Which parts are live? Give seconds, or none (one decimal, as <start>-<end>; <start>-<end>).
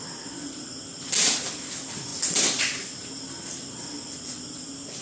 0.0-5.0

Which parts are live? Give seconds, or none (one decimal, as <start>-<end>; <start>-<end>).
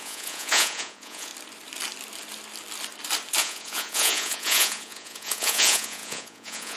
1.3-3.4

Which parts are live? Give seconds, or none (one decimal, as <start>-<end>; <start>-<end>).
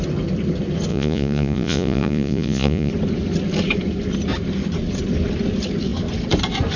0.0-0.9; 2.9-6.8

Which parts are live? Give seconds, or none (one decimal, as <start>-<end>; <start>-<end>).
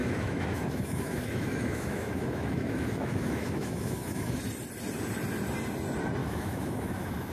4.4-6.2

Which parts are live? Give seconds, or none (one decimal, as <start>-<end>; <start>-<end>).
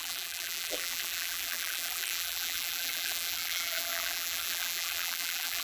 none